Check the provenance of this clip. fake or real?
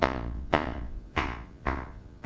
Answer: fake